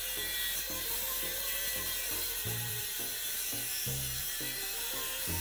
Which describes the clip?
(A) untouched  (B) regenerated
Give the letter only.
B